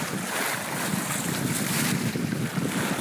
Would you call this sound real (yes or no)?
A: yes